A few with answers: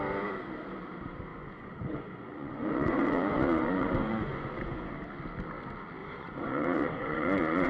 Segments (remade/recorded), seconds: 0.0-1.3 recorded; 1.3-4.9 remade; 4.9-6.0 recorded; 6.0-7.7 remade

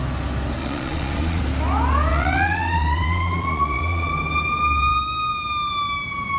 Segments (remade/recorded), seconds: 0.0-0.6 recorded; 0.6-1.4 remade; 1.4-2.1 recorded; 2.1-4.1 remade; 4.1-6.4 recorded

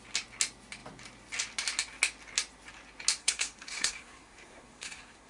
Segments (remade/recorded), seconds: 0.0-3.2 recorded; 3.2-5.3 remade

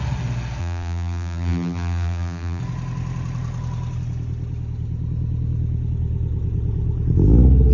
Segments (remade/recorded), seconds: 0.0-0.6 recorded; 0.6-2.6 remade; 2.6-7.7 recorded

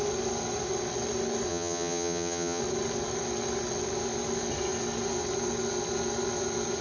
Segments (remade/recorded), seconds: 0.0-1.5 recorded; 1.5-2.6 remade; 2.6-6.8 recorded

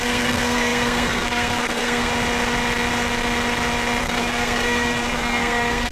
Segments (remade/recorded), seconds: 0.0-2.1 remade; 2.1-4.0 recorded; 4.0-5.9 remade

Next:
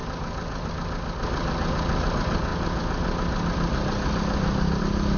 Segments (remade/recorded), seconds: 0.0-5.2 recorded